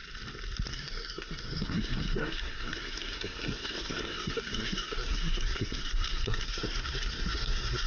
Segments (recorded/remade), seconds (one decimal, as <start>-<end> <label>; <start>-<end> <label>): 0.0-0.7 recorded; 0.7-7.9 remade